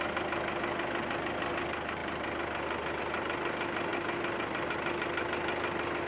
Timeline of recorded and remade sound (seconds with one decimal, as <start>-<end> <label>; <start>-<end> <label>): 0.0-6.1 recorded

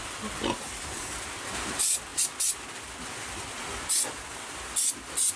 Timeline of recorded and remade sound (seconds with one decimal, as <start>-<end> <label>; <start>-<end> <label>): 0.0-5.4 recorded

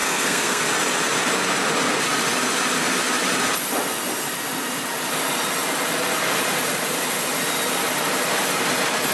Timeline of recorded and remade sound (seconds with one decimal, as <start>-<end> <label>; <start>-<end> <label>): 0.0-0.6 remade; 0.6-9.1 recorded

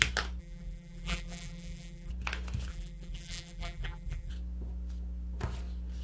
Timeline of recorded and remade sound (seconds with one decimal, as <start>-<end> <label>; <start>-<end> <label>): 0.0-0.4 recorded; 0.4-2.1 remade; 2.1-2.7 recorded; 2.7-4.3 remade; 4.3-6.0 recorded

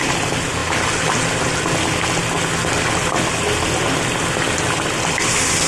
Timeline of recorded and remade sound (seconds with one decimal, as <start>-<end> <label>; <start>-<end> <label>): 0.0-5.7 recorded

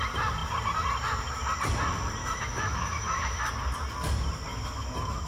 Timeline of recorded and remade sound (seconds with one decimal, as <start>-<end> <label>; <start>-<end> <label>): 0.0-2.2 recorded; 2.2-3.5 remade; 3.5-4.5 recorded; 4.5-5.3 remade

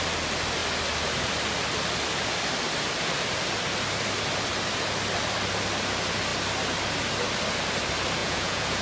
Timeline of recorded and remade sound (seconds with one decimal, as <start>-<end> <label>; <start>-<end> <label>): 0.0-8.2 recorded; 8.2-8.8 remade